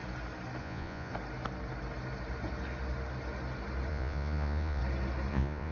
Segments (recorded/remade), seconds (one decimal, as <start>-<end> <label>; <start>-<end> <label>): 0.0-0.6 recorded; 0.6-1.1 remade; 1.1-3.9 recorded; 3.9-4.8 remade; 4.8-5.3 recorded; 5.3-5.7 remade